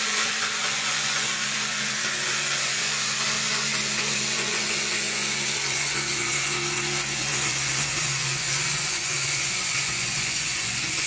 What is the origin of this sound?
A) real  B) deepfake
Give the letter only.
B